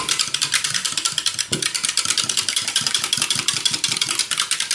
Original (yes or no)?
yes